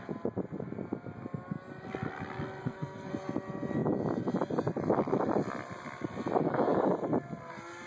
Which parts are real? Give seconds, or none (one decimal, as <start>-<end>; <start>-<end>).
0.0-2.6; 3.1-7.9